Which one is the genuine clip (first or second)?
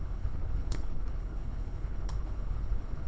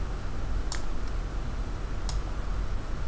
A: second